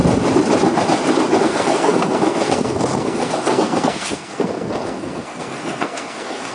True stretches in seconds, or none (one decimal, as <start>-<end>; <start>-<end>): 0.0-1.4